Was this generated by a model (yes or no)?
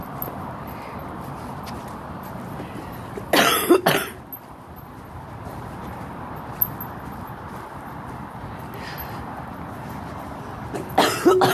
no